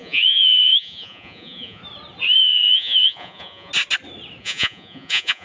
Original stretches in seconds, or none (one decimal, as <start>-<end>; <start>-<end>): 1.8-2.4; 3.7-4.4